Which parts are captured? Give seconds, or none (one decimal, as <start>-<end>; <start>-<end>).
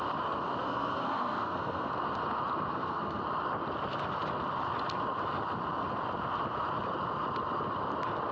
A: 0.0-0.6; 1.9-2.7; 3.2-8.3